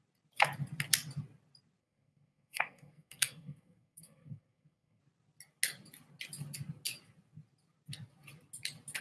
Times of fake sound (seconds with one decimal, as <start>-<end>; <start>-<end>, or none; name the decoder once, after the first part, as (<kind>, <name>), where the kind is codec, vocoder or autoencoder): 1.8-5.0 (codec, SNAC)